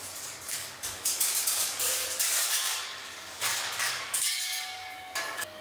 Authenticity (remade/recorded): remade